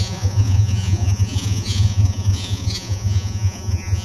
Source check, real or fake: fake